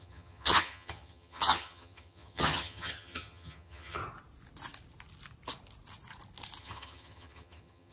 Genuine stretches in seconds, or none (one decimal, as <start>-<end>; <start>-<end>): 4.0-6.6